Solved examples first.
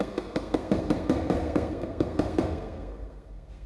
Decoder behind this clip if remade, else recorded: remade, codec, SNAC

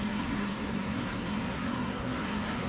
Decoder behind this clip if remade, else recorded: remade, codec, SNAC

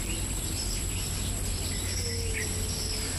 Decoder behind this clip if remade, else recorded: recorded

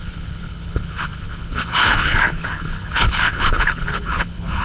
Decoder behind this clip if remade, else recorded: remade, codec, HILCodec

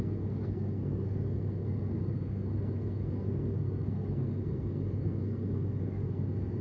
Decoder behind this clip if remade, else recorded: remade, codec, SNAC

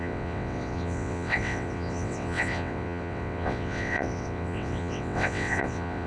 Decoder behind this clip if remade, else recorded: remade, vocoder, WaveNeXt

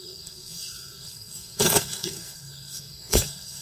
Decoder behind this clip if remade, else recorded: remade, codec, SNAC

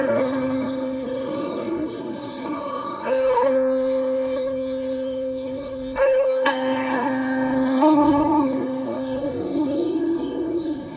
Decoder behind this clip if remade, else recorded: remade, codec, SNAC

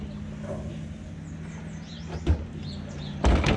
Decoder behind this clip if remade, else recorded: recorded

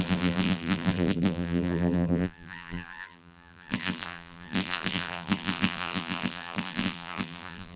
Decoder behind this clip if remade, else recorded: remade, vocoder, BigVGAN v2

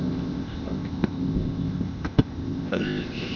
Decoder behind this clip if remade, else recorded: remade, codec, ZipCodec